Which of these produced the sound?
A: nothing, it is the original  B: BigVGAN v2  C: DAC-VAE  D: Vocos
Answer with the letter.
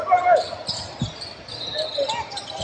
A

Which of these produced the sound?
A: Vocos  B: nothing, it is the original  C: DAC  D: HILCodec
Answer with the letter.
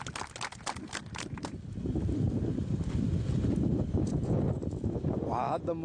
B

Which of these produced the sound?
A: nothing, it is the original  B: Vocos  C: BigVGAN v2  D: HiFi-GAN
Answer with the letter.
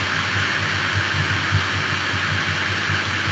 A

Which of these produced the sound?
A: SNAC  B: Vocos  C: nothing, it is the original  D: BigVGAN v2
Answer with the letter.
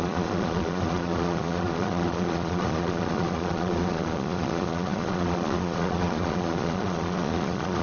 B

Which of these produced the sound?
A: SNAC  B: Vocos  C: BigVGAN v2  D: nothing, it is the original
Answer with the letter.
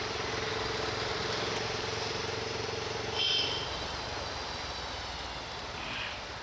D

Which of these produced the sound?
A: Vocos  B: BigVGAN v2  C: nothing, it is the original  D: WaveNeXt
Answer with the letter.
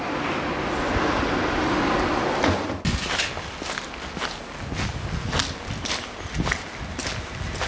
C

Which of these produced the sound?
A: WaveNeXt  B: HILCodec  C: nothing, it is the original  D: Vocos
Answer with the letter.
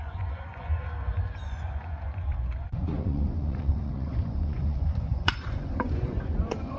D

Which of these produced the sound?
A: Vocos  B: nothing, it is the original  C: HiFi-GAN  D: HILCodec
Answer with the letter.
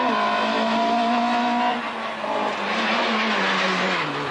B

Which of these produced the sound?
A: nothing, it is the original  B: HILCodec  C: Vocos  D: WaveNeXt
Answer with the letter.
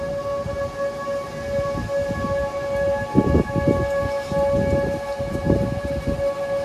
A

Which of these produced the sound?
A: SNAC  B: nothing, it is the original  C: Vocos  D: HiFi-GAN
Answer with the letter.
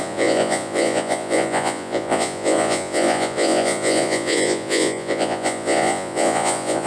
C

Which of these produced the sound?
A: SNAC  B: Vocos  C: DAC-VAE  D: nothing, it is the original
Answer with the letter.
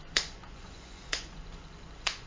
B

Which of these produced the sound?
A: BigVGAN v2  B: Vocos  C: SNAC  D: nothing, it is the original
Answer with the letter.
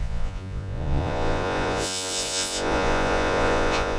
B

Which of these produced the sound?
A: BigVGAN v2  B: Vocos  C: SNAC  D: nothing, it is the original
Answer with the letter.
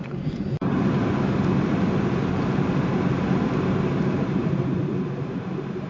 D